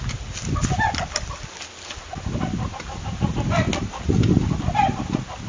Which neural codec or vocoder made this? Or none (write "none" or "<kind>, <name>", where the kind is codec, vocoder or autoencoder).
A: none